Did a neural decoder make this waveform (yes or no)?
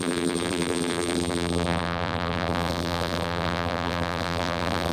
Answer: yes